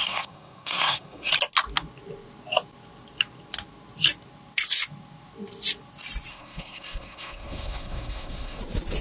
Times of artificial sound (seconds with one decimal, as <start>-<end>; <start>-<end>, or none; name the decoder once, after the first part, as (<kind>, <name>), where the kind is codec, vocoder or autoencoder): 0.0-1.3 (codec, SNAC); 6.3-8.6